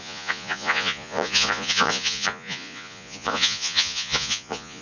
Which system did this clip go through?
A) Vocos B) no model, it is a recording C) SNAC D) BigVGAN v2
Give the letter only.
A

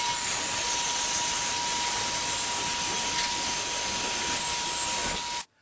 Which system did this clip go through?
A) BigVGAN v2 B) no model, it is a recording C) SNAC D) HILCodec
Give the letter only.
B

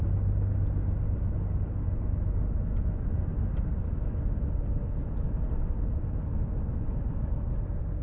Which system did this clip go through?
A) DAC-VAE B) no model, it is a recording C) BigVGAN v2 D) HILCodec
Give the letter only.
B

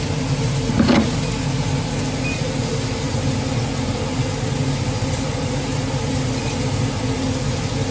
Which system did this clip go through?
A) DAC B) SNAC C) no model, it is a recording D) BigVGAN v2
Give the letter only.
C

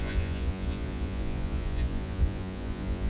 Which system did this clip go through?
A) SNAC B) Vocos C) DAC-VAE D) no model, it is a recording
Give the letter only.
B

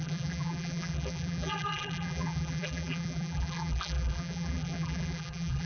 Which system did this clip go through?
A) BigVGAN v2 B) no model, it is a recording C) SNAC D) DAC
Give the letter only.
A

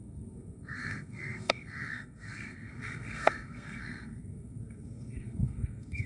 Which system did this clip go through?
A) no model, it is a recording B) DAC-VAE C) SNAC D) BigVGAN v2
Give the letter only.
C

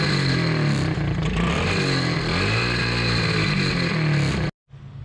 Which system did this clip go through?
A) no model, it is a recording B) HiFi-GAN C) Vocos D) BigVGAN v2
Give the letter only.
A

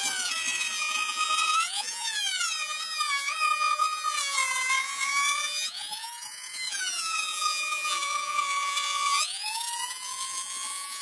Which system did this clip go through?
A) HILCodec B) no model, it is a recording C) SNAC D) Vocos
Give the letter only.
D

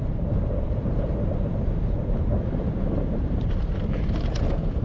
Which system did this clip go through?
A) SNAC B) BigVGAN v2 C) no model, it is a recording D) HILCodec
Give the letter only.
B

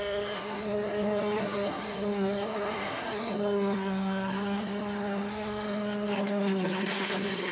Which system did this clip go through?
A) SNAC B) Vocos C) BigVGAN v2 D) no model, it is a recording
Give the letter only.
A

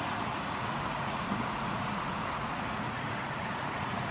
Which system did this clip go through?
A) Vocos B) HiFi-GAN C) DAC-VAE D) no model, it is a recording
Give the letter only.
A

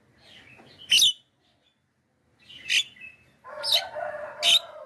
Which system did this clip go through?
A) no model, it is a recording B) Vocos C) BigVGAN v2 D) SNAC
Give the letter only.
A